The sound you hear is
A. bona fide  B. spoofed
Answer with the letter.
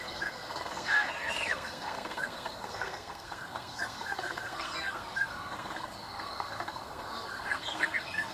B